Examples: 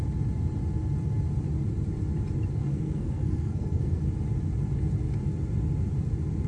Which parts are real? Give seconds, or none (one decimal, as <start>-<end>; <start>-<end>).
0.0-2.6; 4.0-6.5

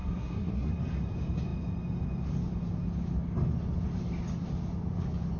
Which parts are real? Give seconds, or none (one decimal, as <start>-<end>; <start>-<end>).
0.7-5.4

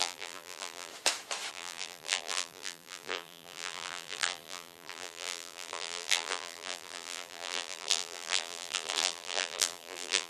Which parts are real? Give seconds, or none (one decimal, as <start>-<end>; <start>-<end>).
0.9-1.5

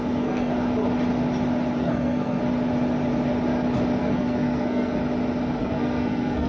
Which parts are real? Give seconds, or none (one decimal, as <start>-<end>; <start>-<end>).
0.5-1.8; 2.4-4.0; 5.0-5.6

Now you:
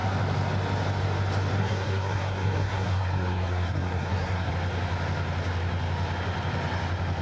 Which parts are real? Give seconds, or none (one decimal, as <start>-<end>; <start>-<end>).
0.0-1.6; 4.5-7.2